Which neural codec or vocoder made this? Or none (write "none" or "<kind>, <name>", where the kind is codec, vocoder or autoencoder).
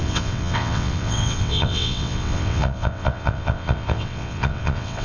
vocoder, WaveNeXt